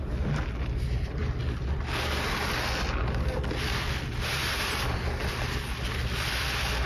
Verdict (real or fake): real